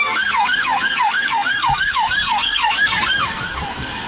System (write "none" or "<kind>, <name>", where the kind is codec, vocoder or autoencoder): codec, SNAC